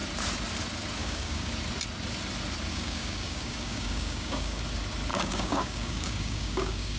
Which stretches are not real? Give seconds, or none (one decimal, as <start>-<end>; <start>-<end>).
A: 1.0-1.5; 2.7-4.6; 5.1-7.0